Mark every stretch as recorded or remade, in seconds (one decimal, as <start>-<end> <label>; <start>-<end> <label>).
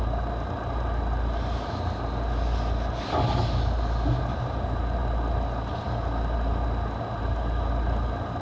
0.0-8.4 recorded